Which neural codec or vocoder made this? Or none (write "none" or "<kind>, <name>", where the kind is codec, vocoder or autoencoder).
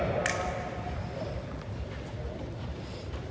none